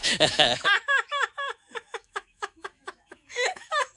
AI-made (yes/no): yes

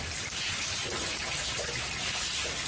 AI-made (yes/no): no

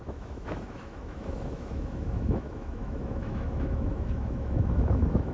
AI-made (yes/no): yes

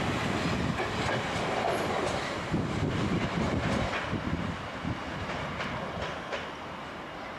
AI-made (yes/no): no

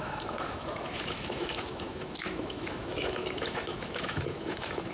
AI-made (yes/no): yes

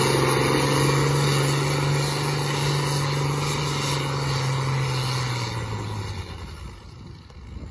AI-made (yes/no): no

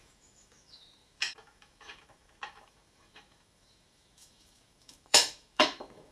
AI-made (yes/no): yes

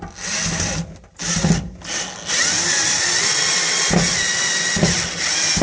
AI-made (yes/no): no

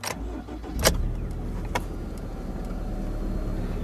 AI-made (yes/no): no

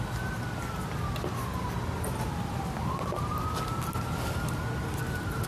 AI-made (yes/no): no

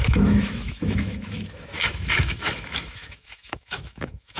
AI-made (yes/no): yes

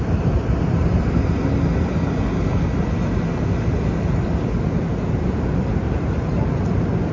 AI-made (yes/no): no